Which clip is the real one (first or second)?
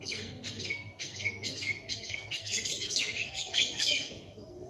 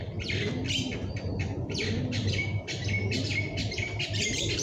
second